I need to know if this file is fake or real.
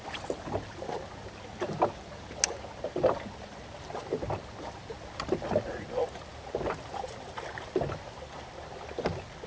real